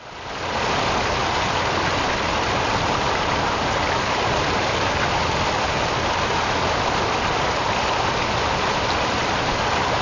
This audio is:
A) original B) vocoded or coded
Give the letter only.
A